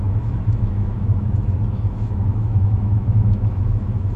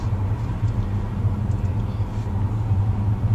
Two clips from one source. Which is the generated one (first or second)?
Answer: first